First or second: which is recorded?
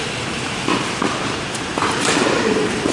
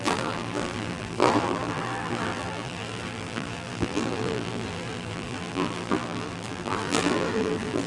first